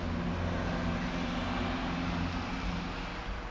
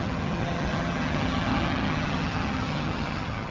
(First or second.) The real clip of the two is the first